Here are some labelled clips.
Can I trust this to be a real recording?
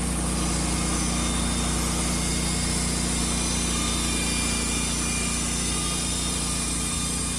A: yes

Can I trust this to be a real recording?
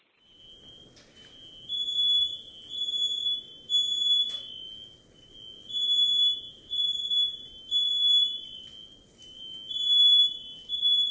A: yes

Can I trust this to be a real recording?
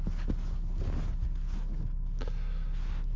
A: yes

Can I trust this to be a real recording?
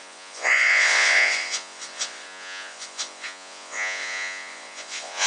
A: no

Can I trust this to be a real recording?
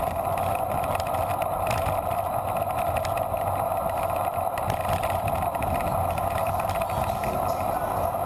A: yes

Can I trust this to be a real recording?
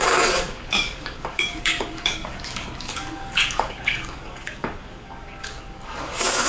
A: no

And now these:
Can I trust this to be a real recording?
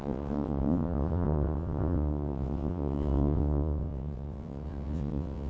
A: no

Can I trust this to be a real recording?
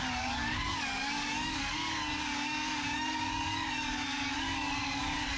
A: no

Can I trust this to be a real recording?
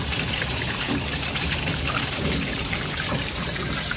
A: no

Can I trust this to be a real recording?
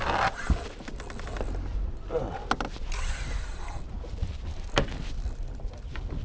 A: yes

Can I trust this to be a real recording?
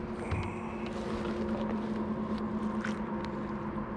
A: yes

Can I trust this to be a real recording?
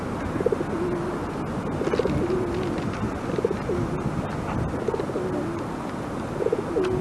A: yes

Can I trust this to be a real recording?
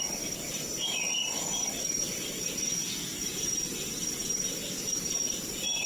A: yes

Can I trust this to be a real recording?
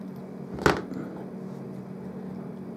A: yes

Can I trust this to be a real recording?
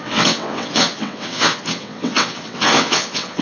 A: no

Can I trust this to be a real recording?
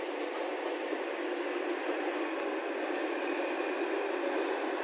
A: yes